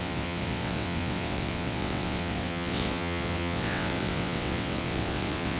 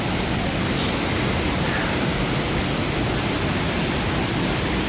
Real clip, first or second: second